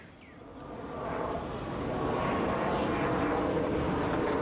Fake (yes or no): no